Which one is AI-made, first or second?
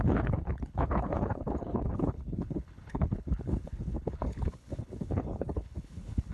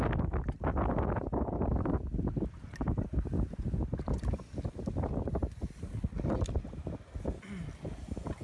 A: first